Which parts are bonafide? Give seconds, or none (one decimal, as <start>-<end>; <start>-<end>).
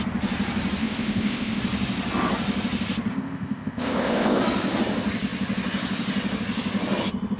0.0-0.8; 1.6-3.1; 4.4-7.4